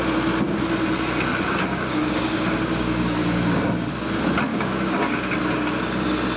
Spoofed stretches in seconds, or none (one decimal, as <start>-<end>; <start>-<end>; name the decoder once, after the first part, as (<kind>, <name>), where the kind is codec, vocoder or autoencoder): 1.3-3.6 (codec, DAC); 4.5-5.3